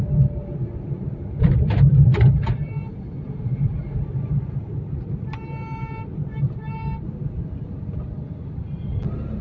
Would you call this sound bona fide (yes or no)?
yes